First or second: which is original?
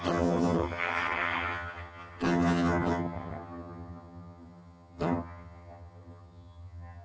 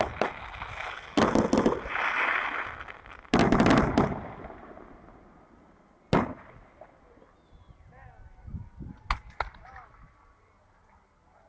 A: second